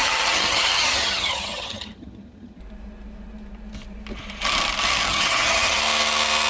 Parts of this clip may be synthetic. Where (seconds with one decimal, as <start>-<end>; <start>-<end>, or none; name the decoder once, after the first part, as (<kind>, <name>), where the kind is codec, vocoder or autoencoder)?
0.0-2.6 (vocoder, HiFi-GAN); 5.1-5.8